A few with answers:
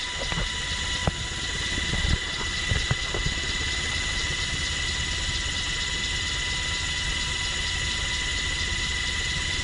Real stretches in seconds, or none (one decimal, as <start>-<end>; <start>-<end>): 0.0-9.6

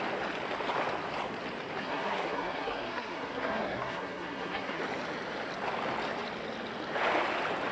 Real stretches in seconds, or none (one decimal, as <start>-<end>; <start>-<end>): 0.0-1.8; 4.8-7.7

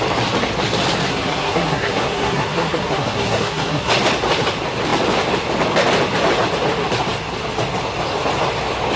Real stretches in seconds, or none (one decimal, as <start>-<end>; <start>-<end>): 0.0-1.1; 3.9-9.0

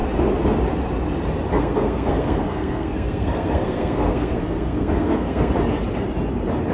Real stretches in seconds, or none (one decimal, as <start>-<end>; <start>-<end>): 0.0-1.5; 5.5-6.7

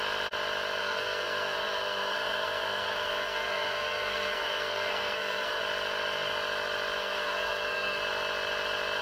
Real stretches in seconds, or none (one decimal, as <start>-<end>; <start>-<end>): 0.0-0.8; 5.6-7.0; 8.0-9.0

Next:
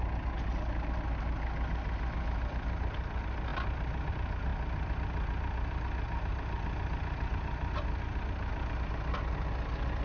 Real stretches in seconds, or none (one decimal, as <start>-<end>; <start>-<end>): 0.0-10.0